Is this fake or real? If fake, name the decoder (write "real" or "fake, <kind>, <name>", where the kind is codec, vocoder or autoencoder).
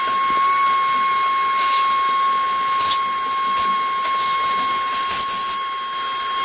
real